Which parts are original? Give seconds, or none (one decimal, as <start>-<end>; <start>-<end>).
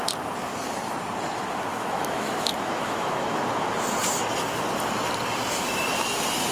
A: 0.0-1.7; 3.4-6.5